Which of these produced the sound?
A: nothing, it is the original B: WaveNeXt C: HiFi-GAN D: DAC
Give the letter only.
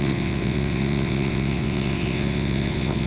B